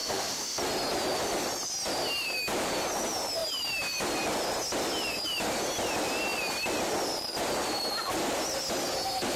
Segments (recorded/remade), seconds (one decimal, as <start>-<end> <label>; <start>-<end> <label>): 0.0-0.6 remade; 0.6-9.4 recorded

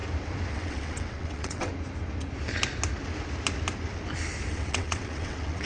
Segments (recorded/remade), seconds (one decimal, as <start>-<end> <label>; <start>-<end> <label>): 0.0-0.5 recorded; 0.5-1.7 remade; 1.7-4.5 recorded; 4.5-5.7 remade

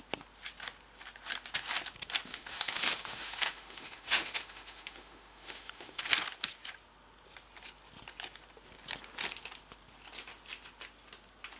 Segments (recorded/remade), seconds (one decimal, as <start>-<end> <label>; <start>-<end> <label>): 0.0-2.3 recorded; 2.3-6.0 remade; 6.0-11.6 recorded

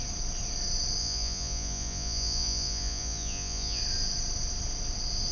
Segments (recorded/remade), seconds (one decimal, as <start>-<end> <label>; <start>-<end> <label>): 0.0-1.0 recorded; 1.0-3.8 remade; 3.8-5.3 recorded

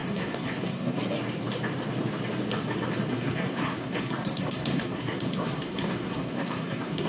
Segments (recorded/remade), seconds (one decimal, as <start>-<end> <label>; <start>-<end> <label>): 0.0-1.0 remade; 1.0-3.1 recorded; 3.1-7.1 remade

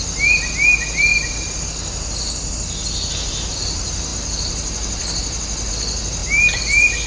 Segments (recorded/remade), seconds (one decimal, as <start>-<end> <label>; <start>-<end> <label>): 0.0-4.1 recorded; 4.1-5.7 remade; 5.7-7.1 recorded

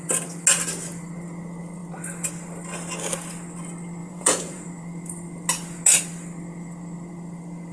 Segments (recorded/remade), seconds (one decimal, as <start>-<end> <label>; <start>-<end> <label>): 0.0-4.0 recorded; 4.0-4.9 remade; 4.9-7.7 recorded

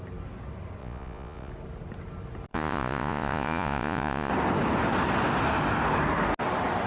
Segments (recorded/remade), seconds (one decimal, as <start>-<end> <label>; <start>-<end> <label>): 0.0-0.8 recorded; 0.8-1.5 remade; 1.5-2.5 recorded; 2.5-4.3 remade; 4.3-6.9 recorded